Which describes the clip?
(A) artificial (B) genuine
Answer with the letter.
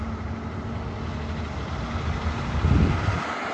B